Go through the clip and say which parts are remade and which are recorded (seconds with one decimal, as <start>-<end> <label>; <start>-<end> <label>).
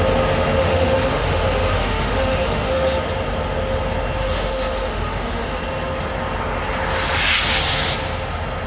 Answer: 0.0-0.6 recorded; 0.6-3.0 remade; 3.0-4.2 recorded; 4.2-5.6 remade; 5.6-8.7 recorded